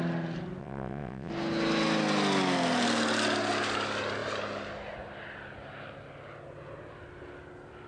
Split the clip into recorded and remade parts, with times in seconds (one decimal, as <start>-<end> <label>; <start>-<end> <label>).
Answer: 0.0-0.6 recorded; 0.6-1.3 remade; 1.3-7.9 recorded

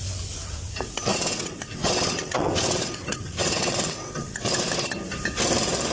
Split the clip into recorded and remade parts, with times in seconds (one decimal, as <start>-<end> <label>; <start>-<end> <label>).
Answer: 0.0-1.1 recorded; 1.1-4.6 remade; 4.6-5.9 recorded

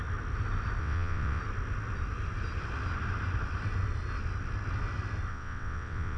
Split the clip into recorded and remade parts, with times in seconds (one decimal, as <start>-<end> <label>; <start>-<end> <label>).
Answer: 0.0-0.8 recorded; 0.8-1.4 remade; 1.4-5.3 recorded; 5.3-6.2 remade